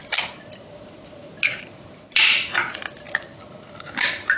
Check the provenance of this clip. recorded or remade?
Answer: recorded